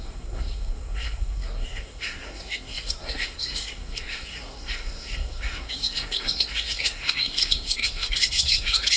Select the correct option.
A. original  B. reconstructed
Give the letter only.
B